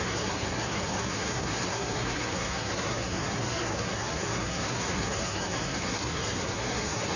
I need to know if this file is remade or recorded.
remade